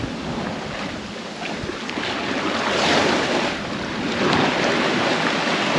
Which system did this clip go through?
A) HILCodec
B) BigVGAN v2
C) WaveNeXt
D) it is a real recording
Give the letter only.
D